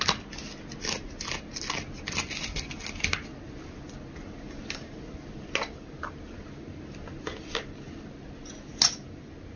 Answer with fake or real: real